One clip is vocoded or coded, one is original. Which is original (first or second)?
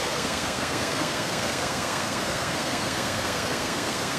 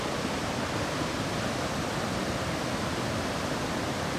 second